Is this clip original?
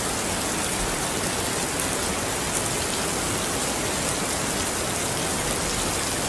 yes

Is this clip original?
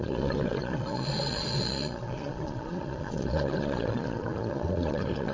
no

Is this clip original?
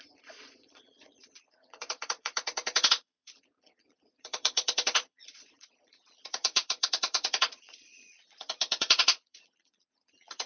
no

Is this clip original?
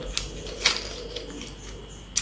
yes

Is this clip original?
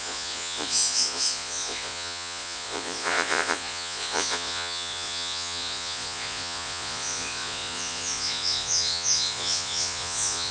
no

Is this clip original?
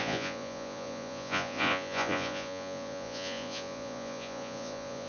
no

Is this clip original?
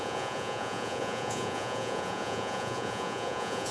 no